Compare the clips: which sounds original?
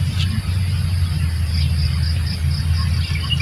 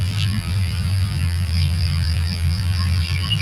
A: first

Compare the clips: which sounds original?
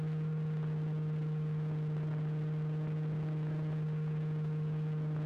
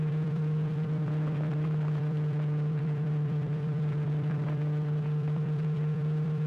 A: first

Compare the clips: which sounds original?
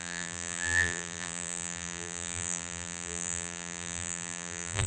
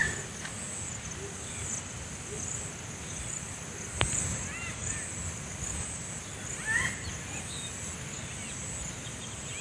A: second